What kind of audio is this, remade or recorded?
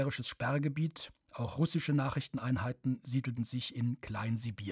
recorded